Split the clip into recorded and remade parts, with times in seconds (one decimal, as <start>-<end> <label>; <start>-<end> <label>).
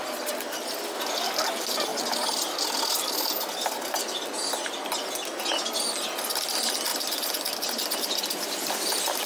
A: 0.0-9.3 recorded